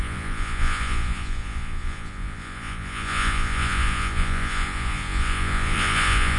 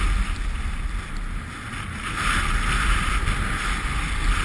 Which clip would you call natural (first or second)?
second